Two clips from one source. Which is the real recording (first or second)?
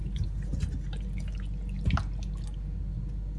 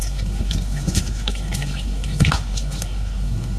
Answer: first